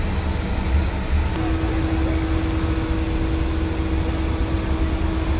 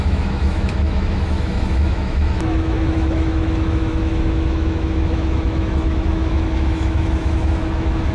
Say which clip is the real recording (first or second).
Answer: first